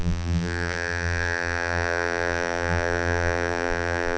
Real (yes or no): no